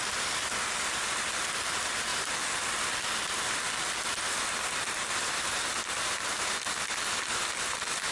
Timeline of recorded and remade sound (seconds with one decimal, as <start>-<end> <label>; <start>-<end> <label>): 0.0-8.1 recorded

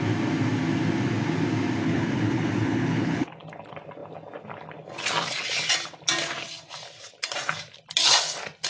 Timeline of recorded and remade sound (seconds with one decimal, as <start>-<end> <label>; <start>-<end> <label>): 0.0-1.8 recorded; 1.8-3.4 remade; 3.4-8.7 recorded

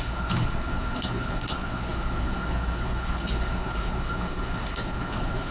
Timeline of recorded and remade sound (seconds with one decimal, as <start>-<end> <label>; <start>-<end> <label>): 0.0-5.5 remade